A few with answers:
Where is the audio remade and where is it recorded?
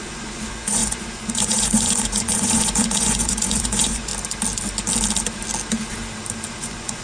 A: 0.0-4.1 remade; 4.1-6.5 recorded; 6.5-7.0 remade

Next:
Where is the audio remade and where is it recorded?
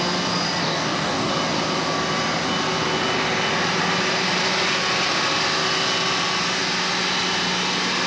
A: 0.0-0.6 recorded; 0.6-1.3 remade; 1.3-8.1 recorded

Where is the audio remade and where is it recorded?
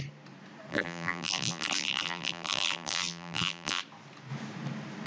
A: 0.0-0.7 recorded; 0.7-3.8 remade; 3.8-5.1 recorded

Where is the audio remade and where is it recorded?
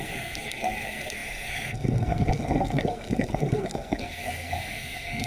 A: 0.0-5.3 remade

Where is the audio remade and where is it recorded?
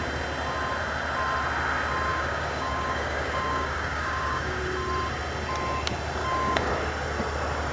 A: 0.0-2.1 recorded; 2.1-4.6 remade; 4.6-6.2 recorded; 6.2-6.7 remade; 6.7-7.7 recorded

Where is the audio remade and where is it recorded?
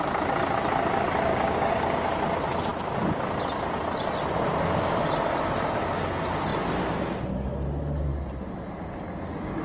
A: 0.0-1.3 recorded; 1.3-2.1 remade; 2.1-9.6 recorded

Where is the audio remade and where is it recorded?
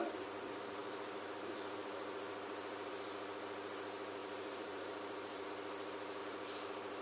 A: 0.0-4.2 recorded; 4.2-5.5 remade; 5.5-6.2 recorded; 6.2-7.0 remade